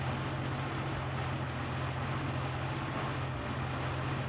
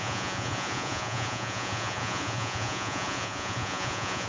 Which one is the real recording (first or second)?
first